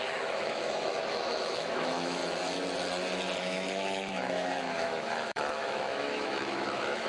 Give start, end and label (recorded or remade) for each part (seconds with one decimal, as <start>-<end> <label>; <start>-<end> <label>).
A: 0.0-2.2 remade; 2.2-3.4 recorded; 3.4-7.1 remade